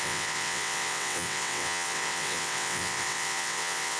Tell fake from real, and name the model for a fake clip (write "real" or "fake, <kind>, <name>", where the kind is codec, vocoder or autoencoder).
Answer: fake, vocoder, WaveNeXt